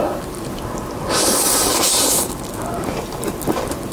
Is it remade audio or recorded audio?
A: recorded